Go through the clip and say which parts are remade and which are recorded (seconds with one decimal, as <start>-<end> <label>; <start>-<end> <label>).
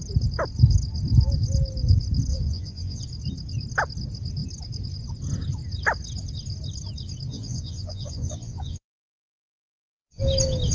0.0-2.3 recorded; 2.3-3.0 remade; 3.0-7.3 recorded; 7.3-10.2 remade; 10.2-10.7 recorded